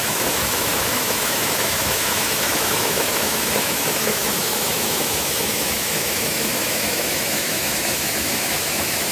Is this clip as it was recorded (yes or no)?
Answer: no